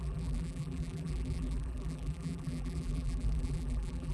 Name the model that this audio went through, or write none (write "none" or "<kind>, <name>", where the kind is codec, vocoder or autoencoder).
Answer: vocoder, BigVGAN v2